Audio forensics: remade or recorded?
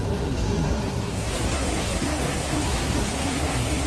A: remade